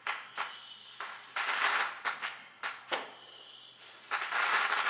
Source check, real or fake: real